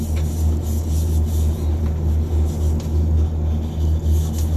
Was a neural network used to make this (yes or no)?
no